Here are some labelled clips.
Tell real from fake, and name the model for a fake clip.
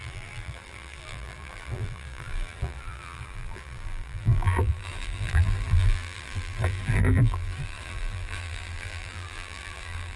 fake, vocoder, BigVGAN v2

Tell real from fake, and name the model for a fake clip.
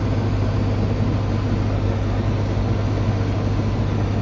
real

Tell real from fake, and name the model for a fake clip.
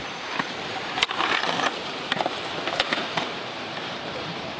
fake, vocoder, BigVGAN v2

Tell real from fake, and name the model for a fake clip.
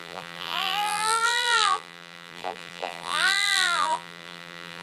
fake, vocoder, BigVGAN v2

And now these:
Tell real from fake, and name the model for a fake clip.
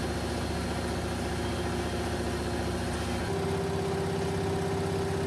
real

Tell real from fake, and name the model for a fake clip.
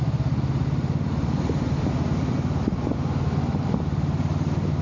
real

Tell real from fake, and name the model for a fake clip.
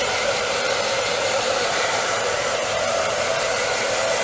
fake, vocoder, BigVGAN v2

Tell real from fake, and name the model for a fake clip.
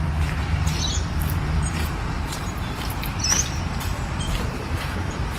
fake, vocoder, BigVGAN v2